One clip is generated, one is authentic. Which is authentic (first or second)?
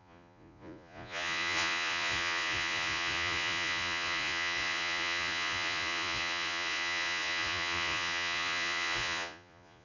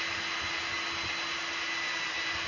second